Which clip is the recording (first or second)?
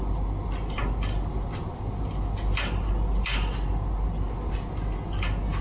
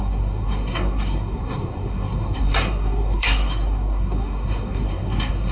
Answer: first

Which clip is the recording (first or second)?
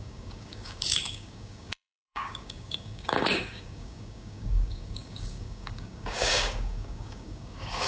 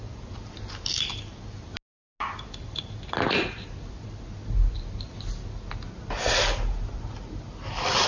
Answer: second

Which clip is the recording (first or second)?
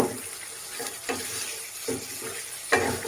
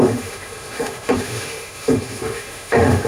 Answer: first